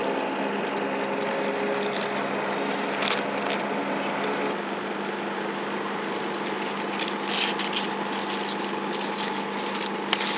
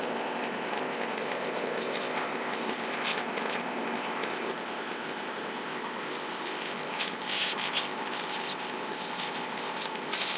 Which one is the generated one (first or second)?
second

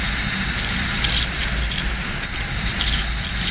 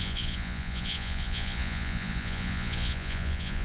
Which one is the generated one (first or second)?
second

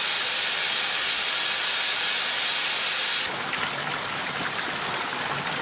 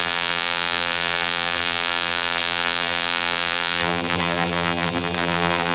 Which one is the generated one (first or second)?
second